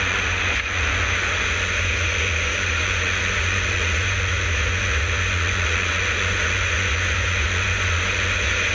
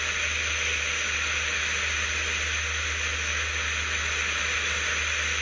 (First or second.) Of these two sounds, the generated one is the first